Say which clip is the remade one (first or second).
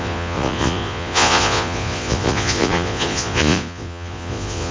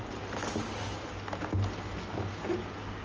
first